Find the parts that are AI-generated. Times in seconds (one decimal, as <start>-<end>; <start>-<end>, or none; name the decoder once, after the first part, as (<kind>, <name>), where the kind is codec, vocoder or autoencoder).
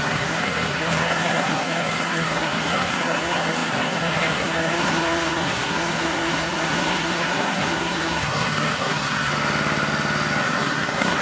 0.0-9.3 (codec, SNAC); 10.4-11.2